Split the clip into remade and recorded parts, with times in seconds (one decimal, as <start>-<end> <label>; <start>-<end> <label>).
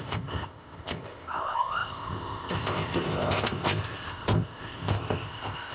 0.0-5.7 remade